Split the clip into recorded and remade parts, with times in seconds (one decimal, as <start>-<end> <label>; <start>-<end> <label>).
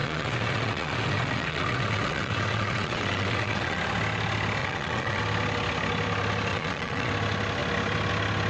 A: 0.0-3.8 remade; 3.8-4.6 recorded; 4.6-5.2 remade; 5.2-6.5 recorded; 6.5-7.1 remade; 7.1-8.5 recorded